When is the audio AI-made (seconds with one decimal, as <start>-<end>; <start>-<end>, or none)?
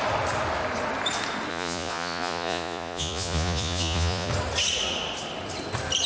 1.5-4.3